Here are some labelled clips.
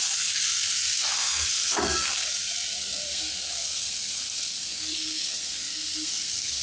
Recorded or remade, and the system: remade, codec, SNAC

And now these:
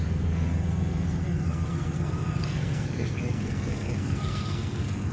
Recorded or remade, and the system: remade, codec, SNAC